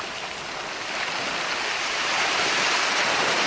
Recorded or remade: recorded